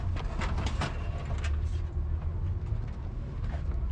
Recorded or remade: recorded